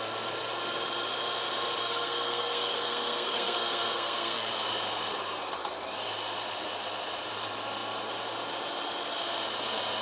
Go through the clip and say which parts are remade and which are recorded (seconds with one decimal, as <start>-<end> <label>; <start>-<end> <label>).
0.0-1.8 recorded; 1.8-4.5 remade; 4.5-10.0 recorded